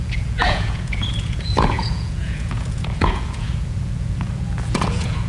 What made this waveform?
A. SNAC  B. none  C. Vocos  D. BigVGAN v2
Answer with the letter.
C